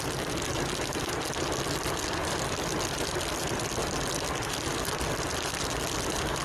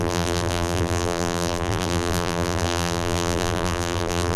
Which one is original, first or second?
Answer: first